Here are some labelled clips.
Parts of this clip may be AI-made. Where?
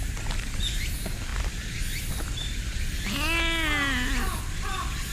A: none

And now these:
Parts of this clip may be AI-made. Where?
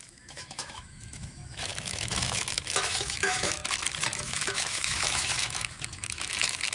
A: 0.0-3.6 (autoencoder, DAC-VAE); 4.2-6.7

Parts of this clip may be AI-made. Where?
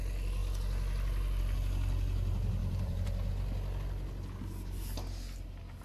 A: 2.6-3.3 (vocoder, BigVGAN v2)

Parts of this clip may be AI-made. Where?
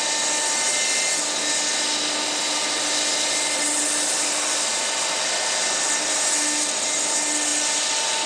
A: none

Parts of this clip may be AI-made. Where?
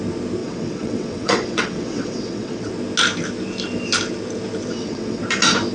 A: 0.4-2.7 (vocoder, WaveNeXt); 4.7-5.2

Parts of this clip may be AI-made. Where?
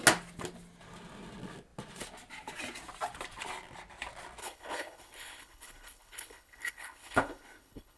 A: 4.4-8.0 (codec, HILCodec)